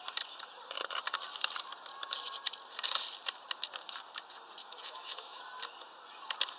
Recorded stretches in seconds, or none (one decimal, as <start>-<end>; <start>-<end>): 0.0-4.6; 5.4-6.6